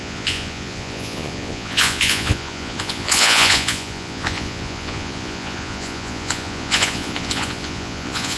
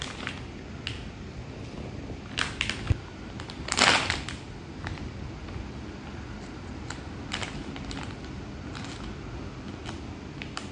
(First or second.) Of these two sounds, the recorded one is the second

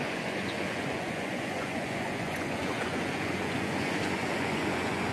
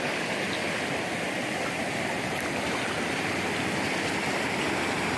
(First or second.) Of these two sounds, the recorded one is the second